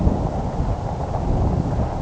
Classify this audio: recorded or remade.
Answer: recorded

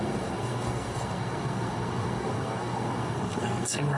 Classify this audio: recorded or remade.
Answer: remade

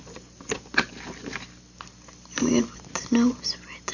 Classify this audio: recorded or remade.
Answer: recorded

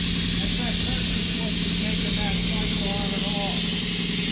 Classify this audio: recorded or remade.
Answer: recorded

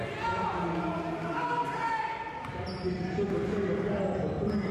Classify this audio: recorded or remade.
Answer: recorded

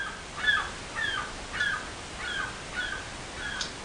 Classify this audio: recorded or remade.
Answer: recorded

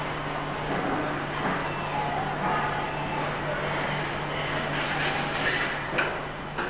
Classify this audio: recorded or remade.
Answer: recorded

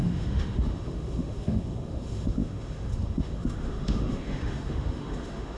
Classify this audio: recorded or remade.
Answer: remade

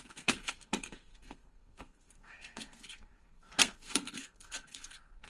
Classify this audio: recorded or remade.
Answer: remade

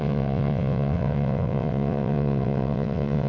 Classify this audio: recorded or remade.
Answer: remade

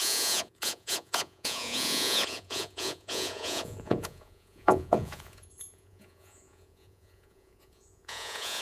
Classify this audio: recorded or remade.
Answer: remade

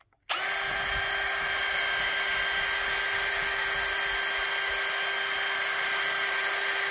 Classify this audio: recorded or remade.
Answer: recorded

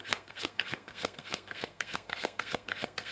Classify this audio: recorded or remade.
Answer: remade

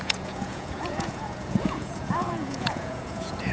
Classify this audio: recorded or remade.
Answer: remade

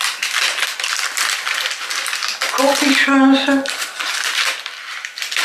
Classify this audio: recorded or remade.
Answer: recorded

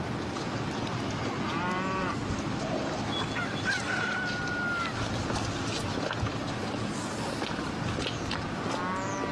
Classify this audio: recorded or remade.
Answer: recorded